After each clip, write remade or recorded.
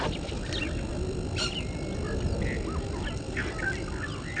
recorded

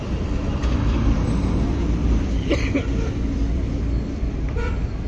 remade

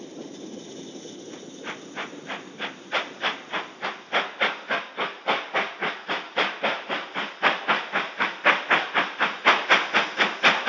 recorded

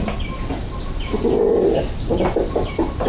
recorded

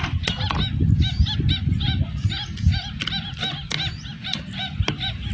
recorded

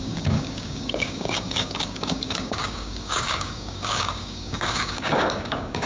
remade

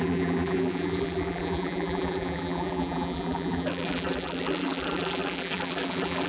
remade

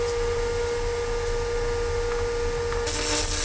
recorded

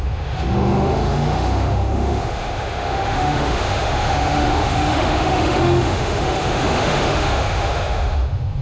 remade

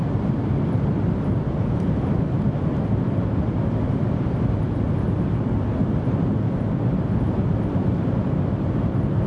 recorded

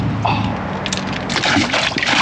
recorded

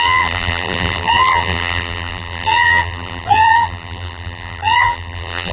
remade